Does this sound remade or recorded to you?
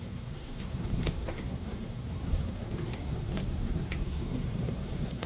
remade